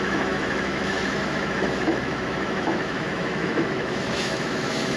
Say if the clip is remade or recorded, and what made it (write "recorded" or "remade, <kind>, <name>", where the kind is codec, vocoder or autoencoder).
remade, autoencoder, DAC-VAE